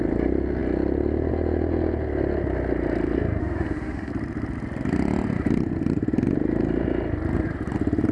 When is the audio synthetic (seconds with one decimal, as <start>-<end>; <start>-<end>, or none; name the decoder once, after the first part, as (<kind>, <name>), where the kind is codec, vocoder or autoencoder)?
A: 3.4-4.1 (autoencoder, DAC-VAE)